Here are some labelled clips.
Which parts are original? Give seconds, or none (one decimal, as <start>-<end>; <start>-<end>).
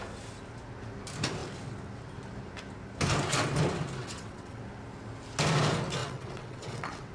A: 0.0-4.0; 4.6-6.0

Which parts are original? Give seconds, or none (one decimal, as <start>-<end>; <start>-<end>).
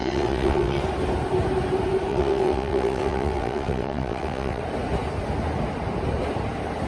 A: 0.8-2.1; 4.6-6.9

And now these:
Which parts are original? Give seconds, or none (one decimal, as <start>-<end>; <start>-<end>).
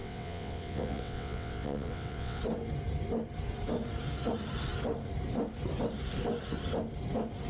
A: 2.4-7.5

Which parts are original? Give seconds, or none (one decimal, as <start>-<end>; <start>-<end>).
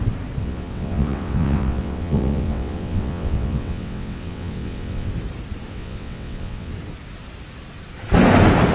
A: 0.0-0.4; 5.1-5.7; 6.7-8.7